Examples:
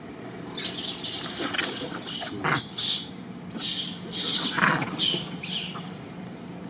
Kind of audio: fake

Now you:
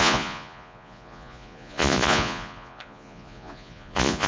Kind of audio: fake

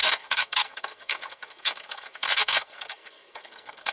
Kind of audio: fake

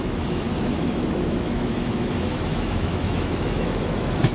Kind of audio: fake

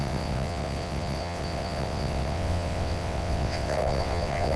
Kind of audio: fake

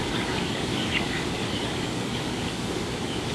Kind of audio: fake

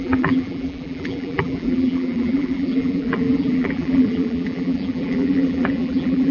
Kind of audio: fake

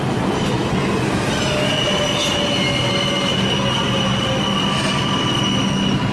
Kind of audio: real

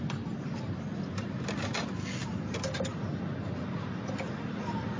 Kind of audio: real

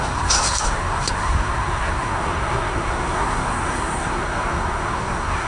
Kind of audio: fake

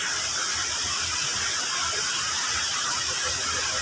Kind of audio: fake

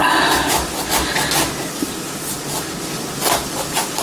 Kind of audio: real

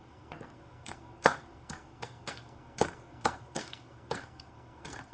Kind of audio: fake